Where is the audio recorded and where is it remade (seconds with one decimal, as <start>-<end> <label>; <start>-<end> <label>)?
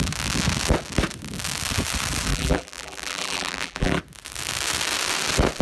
0.0-2.3 recorded; 2.3-4.0 remade; 4.0-5.6 recorded